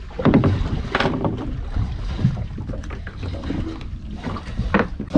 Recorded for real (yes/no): yes